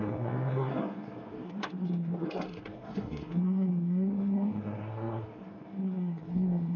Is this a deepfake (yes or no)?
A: yes